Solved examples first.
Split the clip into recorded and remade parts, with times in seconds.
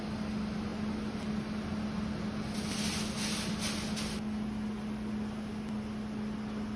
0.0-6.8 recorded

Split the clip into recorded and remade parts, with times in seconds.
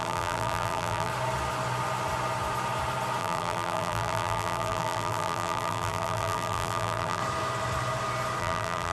0.0-1.1 remade; 1.1-3.2 recorded; 3.2-7.2 remade; 7.2-8.4 recorded; 8.4-8.9 remade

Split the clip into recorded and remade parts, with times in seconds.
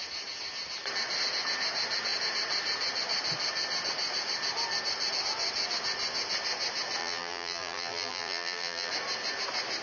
0.0-7.0 recorded; 7.0-8.9 remade; 8.9-9.8 recorded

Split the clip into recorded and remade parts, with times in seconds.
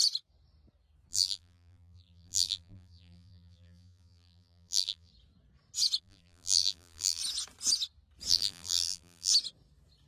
0.0-1.1 recorded; 1.1-5.1 remade; 5.1-6.0 recorded; 6.0-7.2 remade; 7.2-8.3 recorded; 8.3-9.3 remade; 9.3-10.1 recorded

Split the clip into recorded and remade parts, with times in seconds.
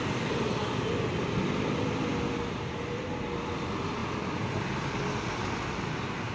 0.0-6.3 recorded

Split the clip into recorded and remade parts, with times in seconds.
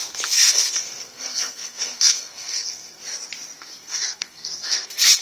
0.0-3.0 remade; 3.0-3.6 recorded; 3.6-5.2 remade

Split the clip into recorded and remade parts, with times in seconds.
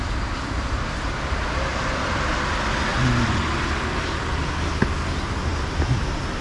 0.0-1.7 recorded; 1.7-2.5 remade; 2.5-2.9 recorded; 2.9-3.8 remade; 3.8-5.5 recorded; 5.5-6.4 remade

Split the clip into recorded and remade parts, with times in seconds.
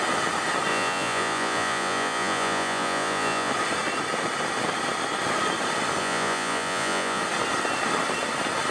0.0-0.7 recorded; 0.7-3.5 remade; 3.5-6.0 recorded; 6.0-7.2 remade; 7.2-8.7 recorded